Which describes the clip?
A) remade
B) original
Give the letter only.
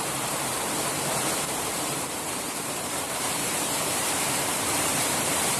A